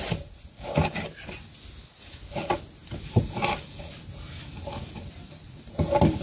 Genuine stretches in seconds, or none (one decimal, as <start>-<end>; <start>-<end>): 0.0-6.2